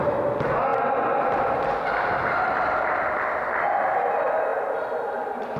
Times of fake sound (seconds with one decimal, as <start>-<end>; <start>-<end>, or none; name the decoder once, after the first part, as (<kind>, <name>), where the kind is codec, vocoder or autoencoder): none